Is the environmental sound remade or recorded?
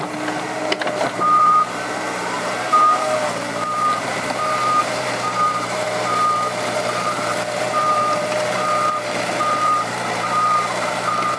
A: remade